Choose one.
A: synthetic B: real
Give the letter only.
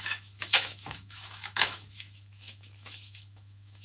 A